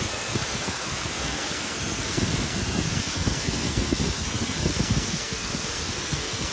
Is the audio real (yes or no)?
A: no